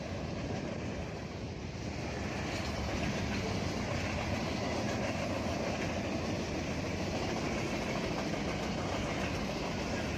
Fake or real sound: real